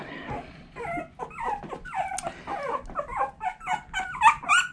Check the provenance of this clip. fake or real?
real